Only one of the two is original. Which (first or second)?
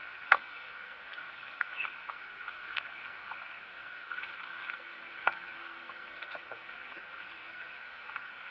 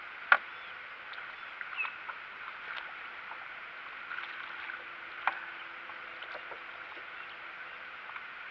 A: second